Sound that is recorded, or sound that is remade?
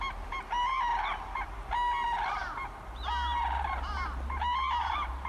recorded